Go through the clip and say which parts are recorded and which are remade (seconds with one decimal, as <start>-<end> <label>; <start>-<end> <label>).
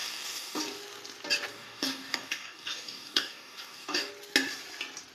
0.0-0.6 remade; 0.6-1.5 recorded; 1.5-4.1 remade; 4.1-5.1 recorded